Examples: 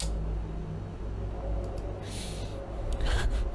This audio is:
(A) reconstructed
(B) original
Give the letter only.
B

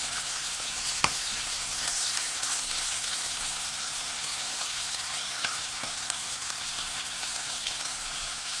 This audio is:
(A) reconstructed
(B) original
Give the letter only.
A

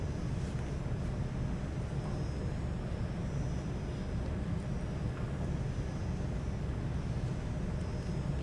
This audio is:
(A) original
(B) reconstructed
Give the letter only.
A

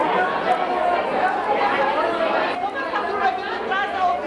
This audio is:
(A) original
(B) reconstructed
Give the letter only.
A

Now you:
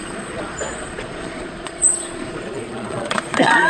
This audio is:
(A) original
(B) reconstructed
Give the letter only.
B